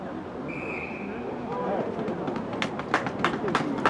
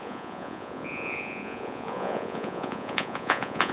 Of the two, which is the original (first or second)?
first